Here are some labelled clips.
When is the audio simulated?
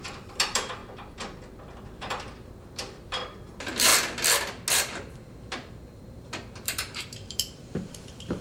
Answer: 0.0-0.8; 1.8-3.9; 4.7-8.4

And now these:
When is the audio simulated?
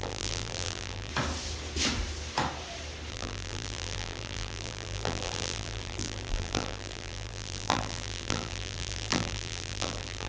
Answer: 0.0-1.1; 3.1-10.3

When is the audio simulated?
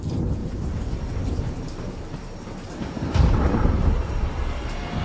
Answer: 0.0-5.0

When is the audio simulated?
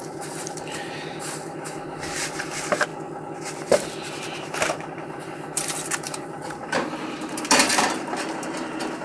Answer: 0.0-2.9; 3.7-9.0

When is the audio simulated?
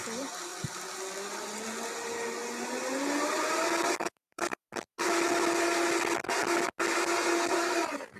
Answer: 0.0-0.5; 4.0-4.6; 7.5-8.2